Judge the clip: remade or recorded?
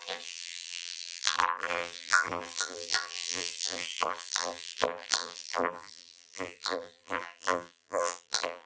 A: remade